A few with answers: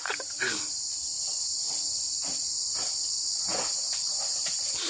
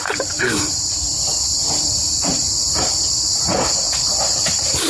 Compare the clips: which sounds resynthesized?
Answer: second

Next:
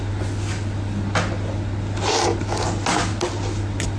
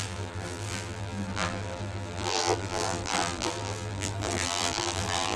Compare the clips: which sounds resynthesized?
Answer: second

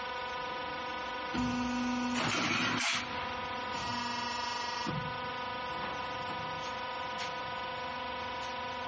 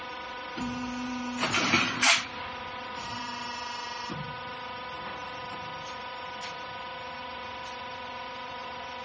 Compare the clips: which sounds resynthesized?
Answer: second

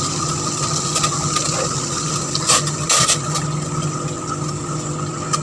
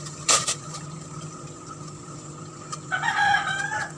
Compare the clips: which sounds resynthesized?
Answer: second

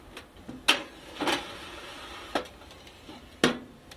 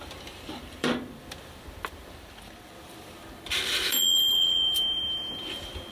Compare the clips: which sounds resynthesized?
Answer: second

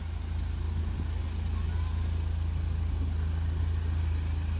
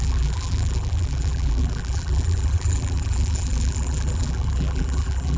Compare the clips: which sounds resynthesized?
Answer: second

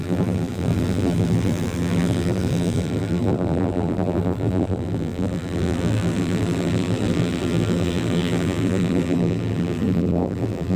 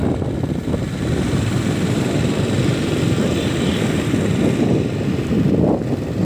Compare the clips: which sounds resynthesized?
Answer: first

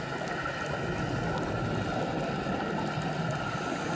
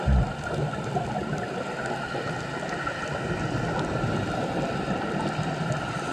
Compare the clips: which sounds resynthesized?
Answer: second